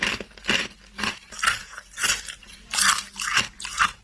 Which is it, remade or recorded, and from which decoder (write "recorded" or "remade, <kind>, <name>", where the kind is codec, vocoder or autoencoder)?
recorded